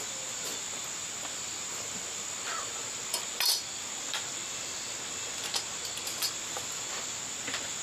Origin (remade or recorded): recorded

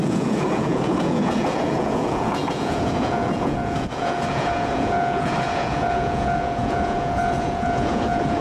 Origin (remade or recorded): remade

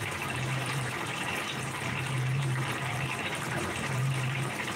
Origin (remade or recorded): remade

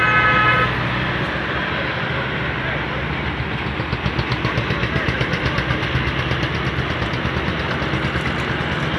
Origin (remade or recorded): recorded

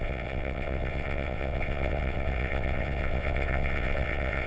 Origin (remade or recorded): remade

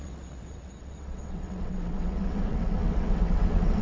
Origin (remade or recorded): remade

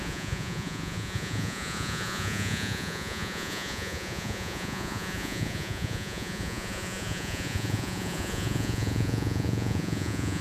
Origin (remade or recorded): remade